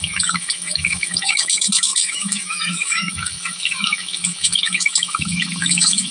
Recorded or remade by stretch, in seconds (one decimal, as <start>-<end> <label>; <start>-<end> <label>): 0.0-6.1 remade